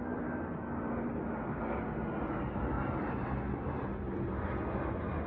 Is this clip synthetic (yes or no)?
no